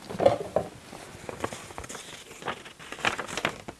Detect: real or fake real